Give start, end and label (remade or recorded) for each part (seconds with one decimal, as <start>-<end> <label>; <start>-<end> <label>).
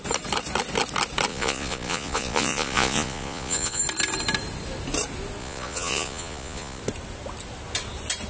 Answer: 0.0-1.3 recorded; 1.3-3.8 remade; 3.8-5.4 recorded; 5.4-6.8 remade; 6.8-8.3 recorded